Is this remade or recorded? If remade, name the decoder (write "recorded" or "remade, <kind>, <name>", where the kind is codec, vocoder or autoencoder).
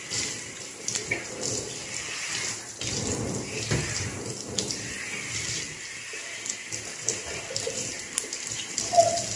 remade, vocoder, BigVGAN v2